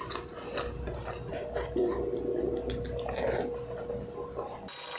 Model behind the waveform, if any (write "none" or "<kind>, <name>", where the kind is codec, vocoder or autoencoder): none